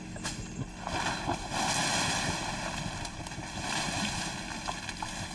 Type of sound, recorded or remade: recorded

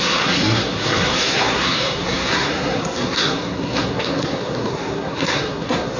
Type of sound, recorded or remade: remade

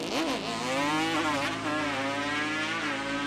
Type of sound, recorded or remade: recorded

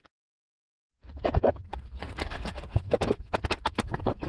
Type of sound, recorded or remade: remade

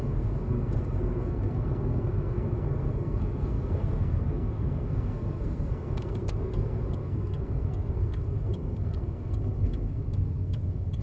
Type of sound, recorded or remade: remade